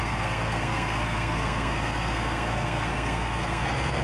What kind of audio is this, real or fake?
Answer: fake